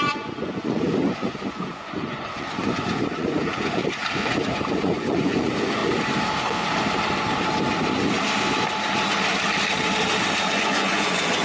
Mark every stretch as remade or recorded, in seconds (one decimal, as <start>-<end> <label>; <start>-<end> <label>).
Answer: 0.0-3.8 remade; 3.8-4.5 recorded; 4.5-5.8 remade; 5.8-10.5 recorded; 10.5-11.4 remade